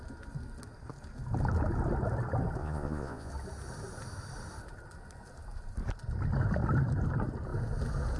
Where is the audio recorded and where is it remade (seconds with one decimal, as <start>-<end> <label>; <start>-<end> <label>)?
0.0-2.6 recorded; 2.6-3.3 remade; 3.3-8.2 recorded